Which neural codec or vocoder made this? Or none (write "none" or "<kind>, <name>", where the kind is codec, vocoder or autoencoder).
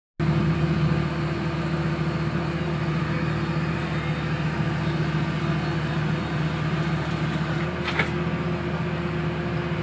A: none